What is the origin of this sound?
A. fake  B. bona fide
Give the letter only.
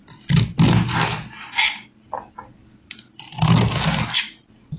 B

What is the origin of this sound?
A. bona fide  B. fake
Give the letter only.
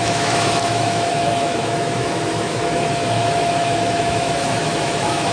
B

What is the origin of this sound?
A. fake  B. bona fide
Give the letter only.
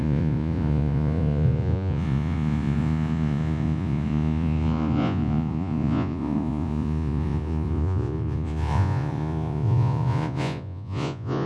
A